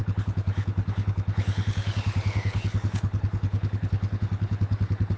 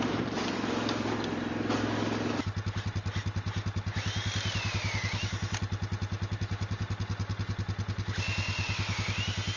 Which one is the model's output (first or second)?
first